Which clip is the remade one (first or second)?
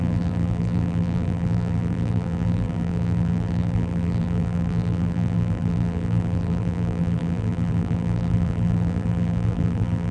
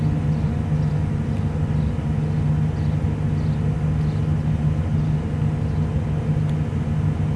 first